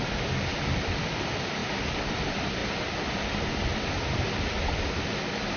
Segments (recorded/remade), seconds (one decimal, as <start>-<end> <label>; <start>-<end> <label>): 0.0-5.6 recorded